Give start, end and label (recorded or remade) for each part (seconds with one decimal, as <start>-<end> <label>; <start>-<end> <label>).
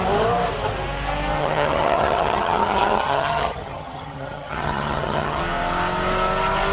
0.0-1.4 recorded; 1.4-5.4 remade; 5.4-6.7 recorded